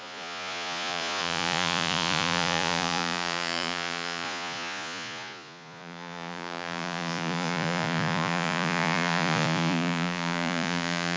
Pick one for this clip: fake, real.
fake